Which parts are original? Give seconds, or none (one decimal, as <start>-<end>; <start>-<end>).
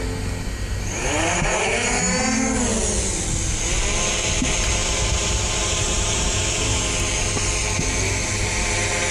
0.0-4.8; 6.8-9.1